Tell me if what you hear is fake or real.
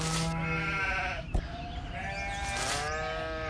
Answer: real